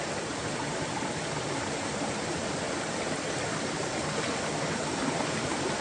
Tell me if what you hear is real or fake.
real